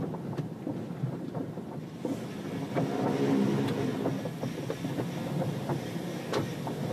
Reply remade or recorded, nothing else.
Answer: recorded